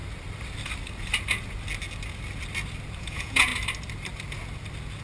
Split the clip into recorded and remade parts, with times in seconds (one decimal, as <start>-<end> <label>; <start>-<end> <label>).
0.0-3.0 recorded; 3.0-3.5 remade; 3.5-5.0 recorded